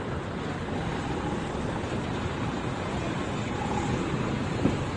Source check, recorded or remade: recorded